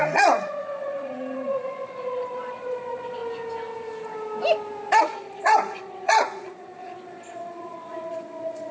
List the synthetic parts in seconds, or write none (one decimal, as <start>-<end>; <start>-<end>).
0.0-3.2; 5.0-8.7